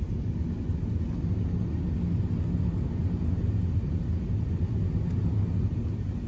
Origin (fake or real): real